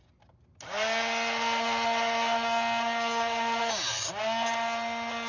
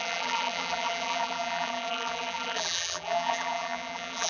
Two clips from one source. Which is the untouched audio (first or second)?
first